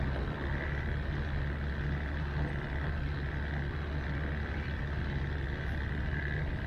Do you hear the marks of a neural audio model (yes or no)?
no